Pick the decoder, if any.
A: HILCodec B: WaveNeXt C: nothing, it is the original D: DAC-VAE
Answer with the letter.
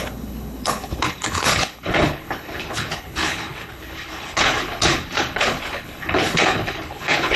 A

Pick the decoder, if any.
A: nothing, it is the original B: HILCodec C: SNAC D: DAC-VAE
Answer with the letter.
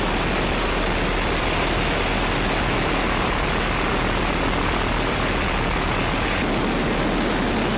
A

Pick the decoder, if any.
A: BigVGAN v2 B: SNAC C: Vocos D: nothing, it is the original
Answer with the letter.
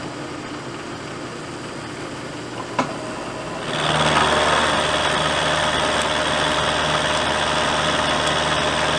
D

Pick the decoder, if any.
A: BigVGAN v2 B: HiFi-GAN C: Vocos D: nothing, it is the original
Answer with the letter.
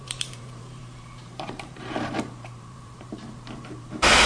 A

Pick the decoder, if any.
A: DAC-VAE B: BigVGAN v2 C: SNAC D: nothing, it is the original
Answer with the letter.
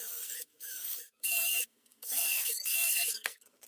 C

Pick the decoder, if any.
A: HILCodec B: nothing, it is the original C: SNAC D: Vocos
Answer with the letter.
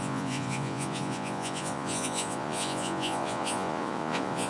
D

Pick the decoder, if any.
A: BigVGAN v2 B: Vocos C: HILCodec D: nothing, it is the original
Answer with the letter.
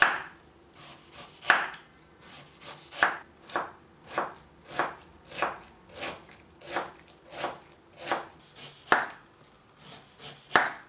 D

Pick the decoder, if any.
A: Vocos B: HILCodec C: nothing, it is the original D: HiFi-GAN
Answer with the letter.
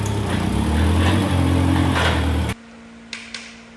C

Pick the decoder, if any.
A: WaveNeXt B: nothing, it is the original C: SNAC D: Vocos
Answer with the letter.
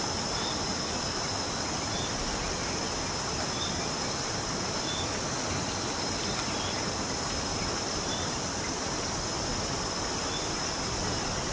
B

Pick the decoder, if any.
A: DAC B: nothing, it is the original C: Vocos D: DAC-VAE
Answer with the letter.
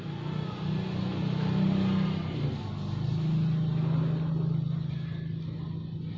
B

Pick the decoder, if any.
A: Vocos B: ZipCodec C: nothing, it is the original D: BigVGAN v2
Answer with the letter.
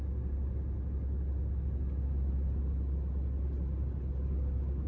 C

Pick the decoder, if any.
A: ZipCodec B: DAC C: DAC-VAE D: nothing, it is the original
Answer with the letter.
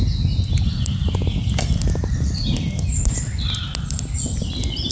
D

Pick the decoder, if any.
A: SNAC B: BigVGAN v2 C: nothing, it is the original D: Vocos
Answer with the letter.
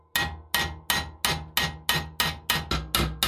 C